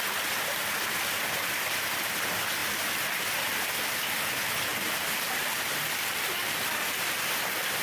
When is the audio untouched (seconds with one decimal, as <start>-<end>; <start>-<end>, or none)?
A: 0.0-4.7; 5.4-7.8